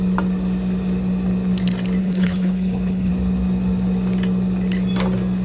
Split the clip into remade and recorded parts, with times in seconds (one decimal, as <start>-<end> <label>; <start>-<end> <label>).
0.0-2.0 recorded; 2.0-3.1 remade; 3.1-5.4 recorded